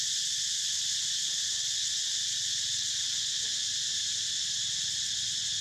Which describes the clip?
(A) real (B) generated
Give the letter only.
A